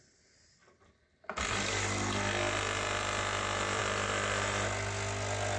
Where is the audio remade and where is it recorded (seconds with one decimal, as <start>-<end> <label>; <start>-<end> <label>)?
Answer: 0.0-5.6 recorded